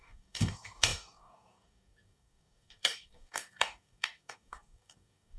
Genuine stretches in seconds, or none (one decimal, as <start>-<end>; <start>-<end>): none